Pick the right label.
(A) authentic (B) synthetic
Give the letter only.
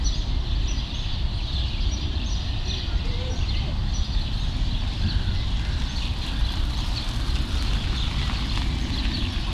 A